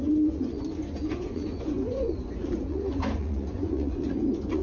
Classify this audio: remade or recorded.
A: remade